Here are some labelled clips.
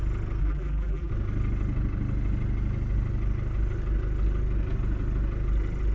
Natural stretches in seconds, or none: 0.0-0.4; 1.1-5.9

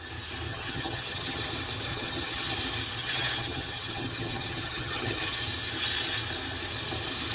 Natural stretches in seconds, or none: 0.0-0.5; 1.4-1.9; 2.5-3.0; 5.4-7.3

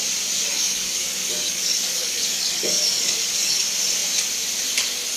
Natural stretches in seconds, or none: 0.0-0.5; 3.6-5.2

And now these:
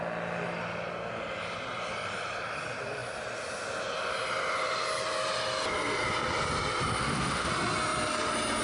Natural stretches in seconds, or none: 0.0-7.0; 7.5-8.6